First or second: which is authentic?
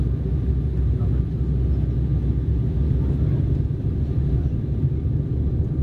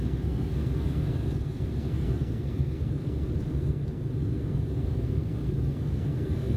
first